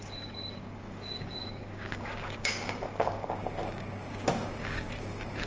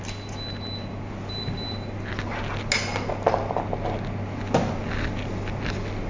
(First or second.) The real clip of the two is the second